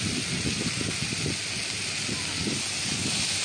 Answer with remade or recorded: recorded